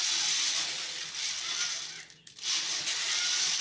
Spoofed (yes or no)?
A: no